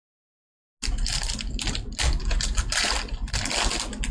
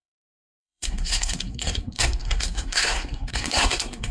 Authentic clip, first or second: first